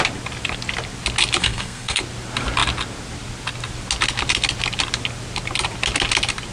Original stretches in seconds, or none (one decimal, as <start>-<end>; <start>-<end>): 0.0-1.4; 2.0-6.5